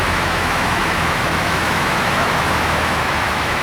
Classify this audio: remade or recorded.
remade